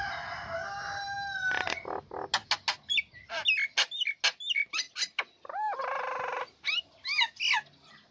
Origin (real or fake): real